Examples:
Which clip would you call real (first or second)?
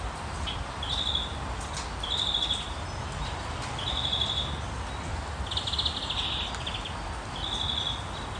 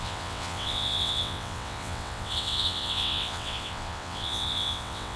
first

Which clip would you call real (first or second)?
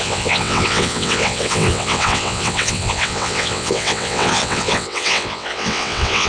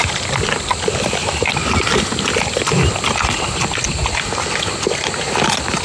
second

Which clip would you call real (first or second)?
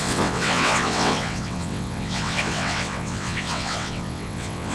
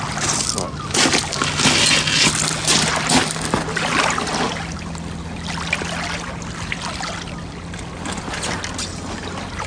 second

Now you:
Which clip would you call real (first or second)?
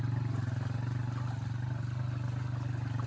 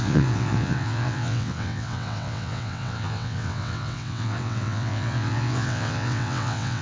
first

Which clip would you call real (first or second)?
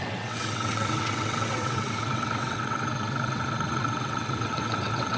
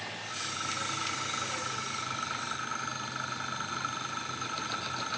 second